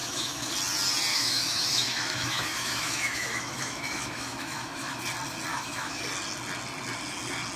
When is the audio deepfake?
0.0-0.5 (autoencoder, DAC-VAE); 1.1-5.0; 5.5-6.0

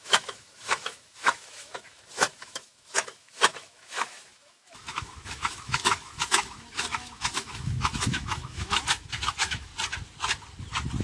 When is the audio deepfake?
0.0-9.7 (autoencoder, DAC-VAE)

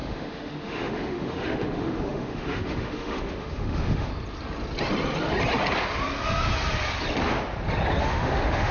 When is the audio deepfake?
0.0-4.1 (autoencoder, DAC-VAE); 8.0-8.7